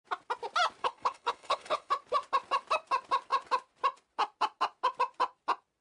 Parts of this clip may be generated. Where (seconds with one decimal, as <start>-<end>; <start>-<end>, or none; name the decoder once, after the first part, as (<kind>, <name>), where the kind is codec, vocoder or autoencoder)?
0.8-1.9 (codec, HILCodec)